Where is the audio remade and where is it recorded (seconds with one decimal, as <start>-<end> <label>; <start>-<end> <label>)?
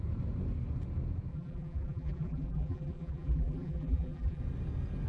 0.0-1.3 recorded; 1.3-4.4 remade; 4.4-5.1 recorded